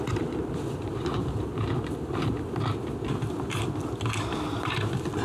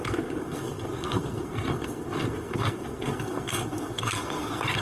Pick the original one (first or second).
first